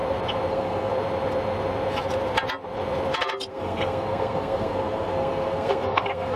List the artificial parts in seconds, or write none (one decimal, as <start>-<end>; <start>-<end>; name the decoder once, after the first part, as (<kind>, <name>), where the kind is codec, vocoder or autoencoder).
0.5-0.9 (codec, SNAC); 3.5-6.4